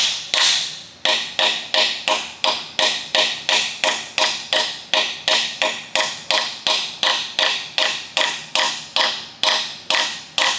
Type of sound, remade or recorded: recorded